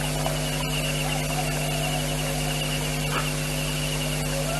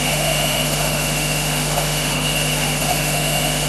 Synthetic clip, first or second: second